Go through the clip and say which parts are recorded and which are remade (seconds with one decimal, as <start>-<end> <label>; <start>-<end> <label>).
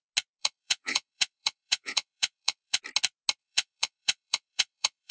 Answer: 0.0-0.4 recorded; 0.4-2.8 remade; 2.8-3.4 recorded; 3.4-5.1 remade